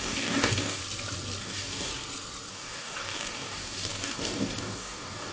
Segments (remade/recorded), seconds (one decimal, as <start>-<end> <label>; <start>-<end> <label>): 0.0-0.8 remade; 0.8-1.4 recorded; 1.4-1.9 remade; 1.9-2.5 recorded; 2.5-5.3 remade